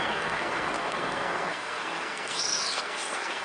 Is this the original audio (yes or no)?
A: no